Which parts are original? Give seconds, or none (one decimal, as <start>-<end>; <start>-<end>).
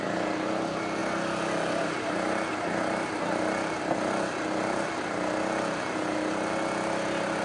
0.0-7.4